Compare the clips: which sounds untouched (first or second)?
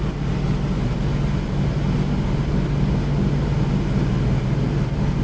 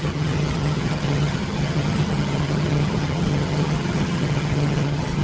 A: first